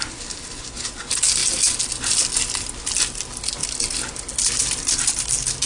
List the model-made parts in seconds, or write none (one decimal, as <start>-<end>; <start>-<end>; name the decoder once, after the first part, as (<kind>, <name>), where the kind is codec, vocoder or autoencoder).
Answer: none